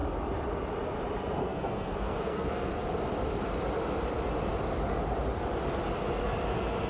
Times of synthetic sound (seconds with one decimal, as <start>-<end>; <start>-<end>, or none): 1.4-2.7